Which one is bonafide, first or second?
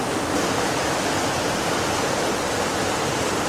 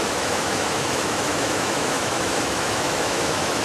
first